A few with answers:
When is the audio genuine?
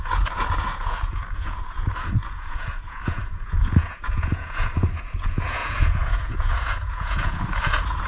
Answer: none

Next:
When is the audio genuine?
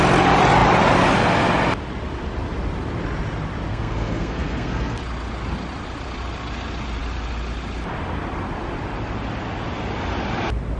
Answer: 0.0-3.7; 5.0-10.8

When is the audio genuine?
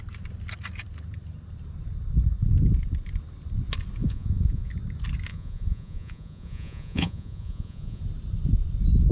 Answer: 0.0-4.0; 4.7-5.3; 8.0-9.1